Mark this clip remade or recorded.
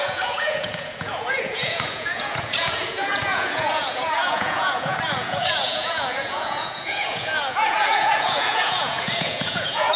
remade